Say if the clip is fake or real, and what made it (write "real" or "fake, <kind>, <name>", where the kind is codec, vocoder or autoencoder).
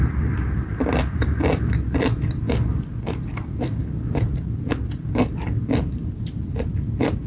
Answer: real